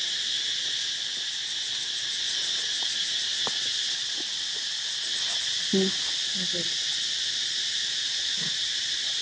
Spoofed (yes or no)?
no